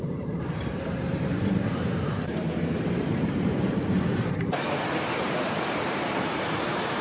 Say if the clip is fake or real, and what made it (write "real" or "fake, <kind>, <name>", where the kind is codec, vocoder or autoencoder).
fake, vocoder, BigVGAN v2